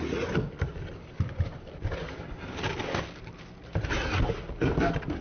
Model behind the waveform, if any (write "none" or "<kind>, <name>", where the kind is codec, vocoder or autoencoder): none